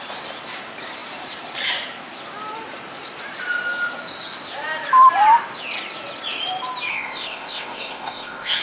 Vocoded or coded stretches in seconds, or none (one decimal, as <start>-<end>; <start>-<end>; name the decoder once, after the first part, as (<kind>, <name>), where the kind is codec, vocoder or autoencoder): 6.9-8.6 (codec, ZipCodec)